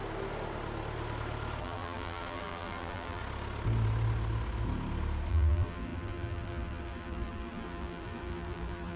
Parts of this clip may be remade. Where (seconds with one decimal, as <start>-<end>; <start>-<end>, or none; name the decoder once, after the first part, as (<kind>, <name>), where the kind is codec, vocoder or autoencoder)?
1.6-3.2 (vocoder, BigVGAN v2); 5.3-9.0